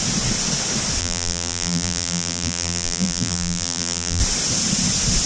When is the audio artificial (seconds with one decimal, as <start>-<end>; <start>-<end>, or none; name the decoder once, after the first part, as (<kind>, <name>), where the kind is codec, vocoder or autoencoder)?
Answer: 1.0-4.2 (vocoder, BigVGAN v2)